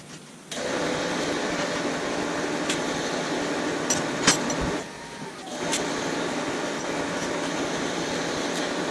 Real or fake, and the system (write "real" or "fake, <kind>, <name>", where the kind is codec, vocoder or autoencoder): real